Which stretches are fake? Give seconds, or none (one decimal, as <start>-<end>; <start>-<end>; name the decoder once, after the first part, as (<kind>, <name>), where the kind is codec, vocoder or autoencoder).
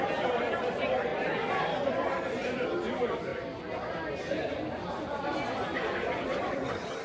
0.0-1.1 (vocoder, BigVGAN v2); 1.9-3.3; 6.4-7.0